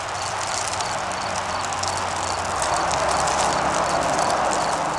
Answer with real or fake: real